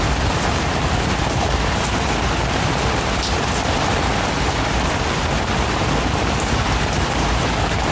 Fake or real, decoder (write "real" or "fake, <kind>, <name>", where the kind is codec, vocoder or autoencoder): real